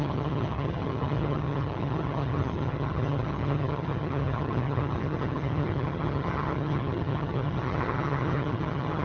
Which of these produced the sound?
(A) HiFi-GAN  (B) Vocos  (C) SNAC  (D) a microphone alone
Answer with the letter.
A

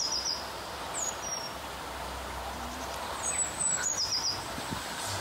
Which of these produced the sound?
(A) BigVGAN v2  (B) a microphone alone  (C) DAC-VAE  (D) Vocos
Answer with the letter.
B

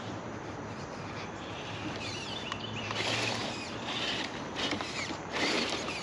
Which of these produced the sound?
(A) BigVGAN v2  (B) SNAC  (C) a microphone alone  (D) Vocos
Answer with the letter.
A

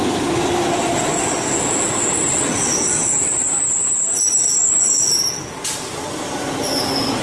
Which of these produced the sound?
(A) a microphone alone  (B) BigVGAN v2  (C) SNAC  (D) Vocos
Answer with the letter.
A